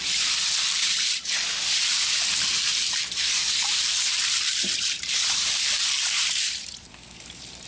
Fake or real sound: fake